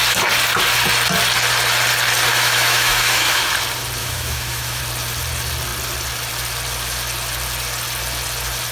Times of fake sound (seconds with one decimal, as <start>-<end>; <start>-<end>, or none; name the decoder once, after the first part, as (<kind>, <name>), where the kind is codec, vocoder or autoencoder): 2.3-3.4 (autoencoder, DAC-VAE); 4.0-4.8